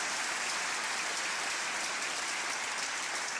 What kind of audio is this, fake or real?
real